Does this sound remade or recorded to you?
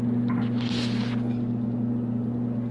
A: recorded